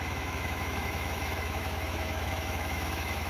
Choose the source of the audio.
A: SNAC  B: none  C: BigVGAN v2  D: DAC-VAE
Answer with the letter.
D